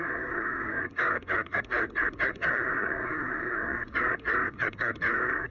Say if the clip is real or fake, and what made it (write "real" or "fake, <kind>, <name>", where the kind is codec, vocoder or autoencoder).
fake, codec, SNAC